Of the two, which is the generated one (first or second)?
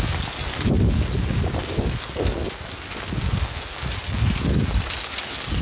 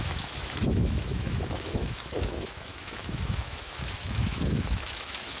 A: second